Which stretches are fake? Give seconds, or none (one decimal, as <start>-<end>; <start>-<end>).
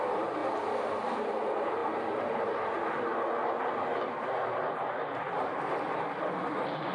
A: none